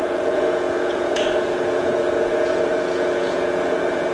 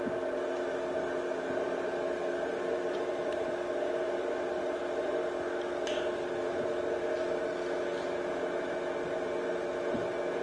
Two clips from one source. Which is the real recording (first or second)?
second